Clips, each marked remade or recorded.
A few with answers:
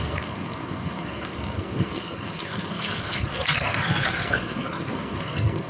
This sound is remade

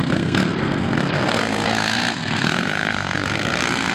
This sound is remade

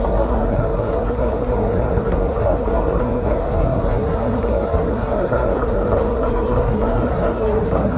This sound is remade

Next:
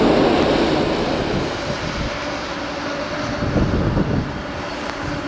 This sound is recorded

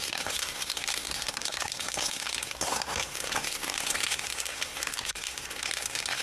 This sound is remade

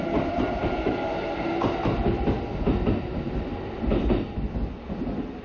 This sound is recorded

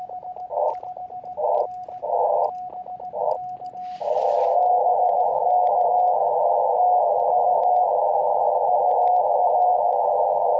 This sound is recorded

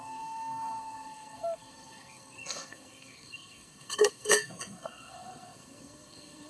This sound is remade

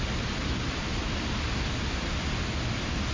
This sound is recorded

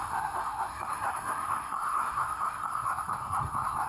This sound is remade